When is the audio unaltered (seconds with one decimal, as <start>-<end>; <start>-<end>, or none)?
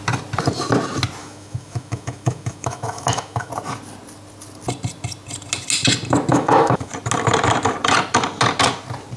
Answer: 0.0-1.2; 3.5-6.3; 6.9-9.2